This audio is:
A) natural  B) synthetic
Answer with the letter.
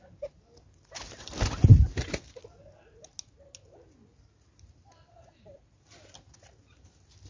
A